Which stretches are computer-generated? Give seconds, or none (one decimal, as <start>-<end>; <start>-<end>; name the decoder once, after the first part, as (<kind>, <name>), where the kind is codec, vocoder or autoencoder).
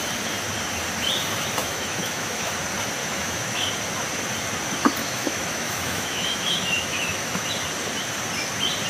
1.6-2.5 (autoencoder, DAC-VAE); 3.0-3.7; 5.0-7.5